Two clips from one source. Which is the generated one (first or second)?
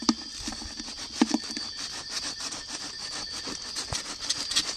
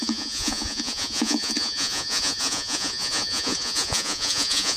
second